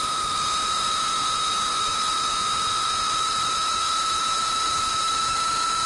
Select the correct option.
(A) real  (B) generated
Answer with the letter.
B